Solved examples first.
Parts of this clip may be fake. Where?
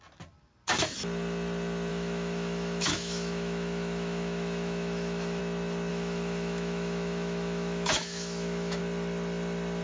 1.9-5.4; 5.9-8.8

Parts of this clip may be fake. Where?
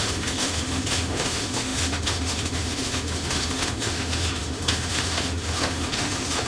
0.0-6.5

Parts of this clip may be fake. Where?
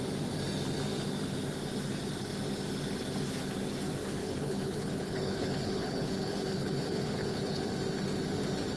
4.2-7.7